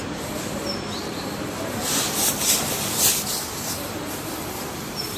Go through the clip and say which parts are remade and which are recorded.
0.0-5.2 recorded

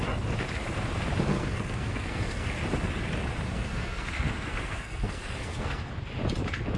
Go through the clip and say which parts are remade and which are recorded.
0.0-1.3 recorded; 1.3-2.5 remade; 2.5-3.5 recorded; 3.5-5.9 remade; 5.9-6.8 recorded

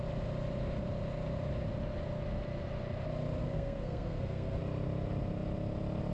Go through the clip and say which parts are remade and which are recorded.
0.0-3.4 recorded; 3.4-4.6 remade; 4.6-6.1 recorded

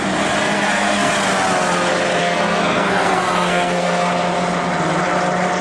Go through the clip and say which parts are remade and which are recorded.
0.0-0.4 recorded; 0.4-1.1 remade; 1.1-2.2 recorded; 2.2-4.1 remade; 4.1-5.6 recorded

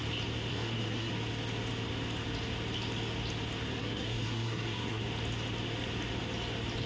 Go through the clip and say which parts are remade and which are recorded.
0.0-0.5 recorded; 0.5-1.1 remade; 1.1-3.8 recorded; 3.8-5.0 remade; 5.0-6.9 recorded

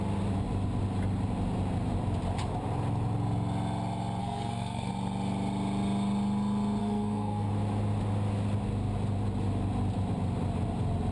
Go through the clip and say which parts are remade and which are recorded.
0.0-4.2 recorded; 4.2-4.9 remade; 4.9-6.8 recorded; 6.8-7.5 remade; 7.5-11.1 recorded

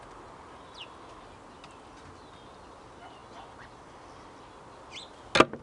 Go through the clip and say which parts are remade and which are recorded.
0.0-5.6 recorded

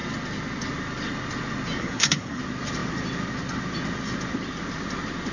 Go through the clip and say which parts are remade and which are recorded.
0.0-1.8 recorded; 1.8-2.4 remade; 2.4-5.3 recorded